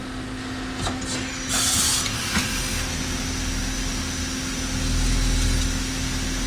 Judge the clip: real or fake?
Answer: real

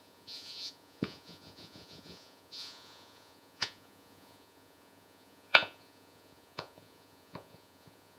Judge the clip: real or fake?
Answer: fake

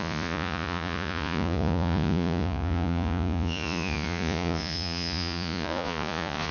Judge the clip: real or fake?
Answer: fake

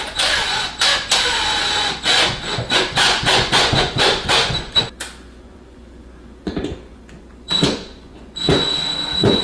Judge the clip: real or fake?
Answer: fake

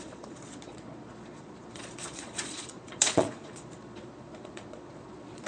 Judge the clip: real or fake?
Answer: fake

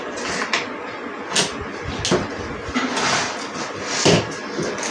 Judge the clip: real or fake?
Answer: real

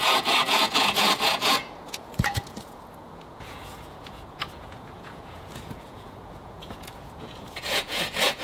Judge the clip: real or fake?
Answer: fake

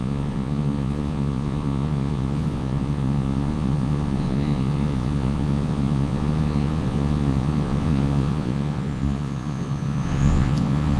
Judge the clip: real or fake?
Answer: fake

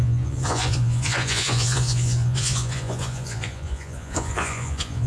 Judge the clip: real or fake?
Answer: fake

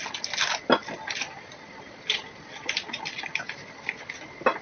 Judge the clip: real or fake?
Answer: real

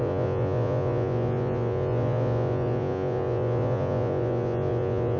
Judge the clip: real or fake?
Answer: fake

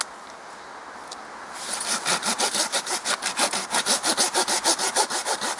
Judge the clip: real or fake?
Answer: real